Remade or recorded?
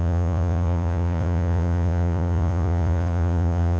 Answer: remade